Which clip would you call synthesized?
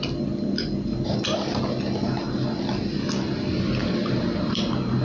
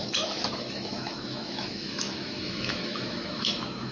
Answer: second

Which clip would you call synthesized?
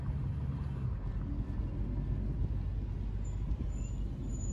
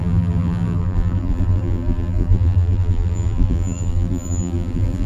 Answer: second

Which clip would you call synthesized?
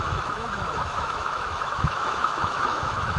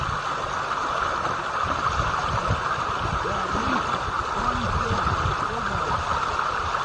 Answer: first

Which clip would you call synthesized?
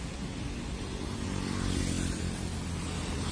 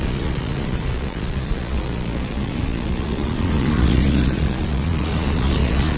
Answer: second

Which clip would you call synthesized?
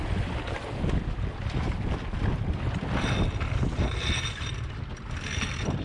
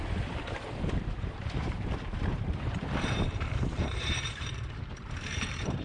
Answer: second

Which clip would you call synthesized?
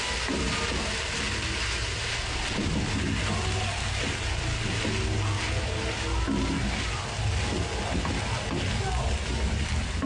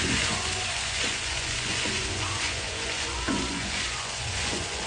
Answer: second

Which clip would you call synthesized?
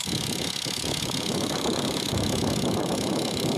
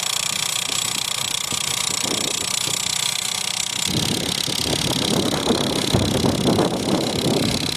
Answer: first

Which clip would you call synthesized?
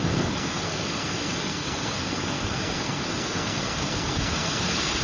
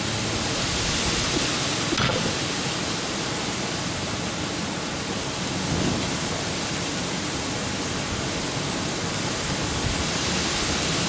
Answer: first